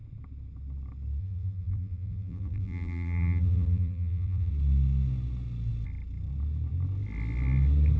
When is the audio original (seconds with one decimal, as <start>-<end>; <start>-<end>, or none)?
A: 0.0-1.2; 4.5-8.0